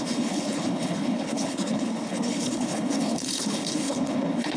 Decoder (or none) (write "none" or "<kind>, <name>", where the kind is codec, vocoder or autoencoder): codec, HILCodec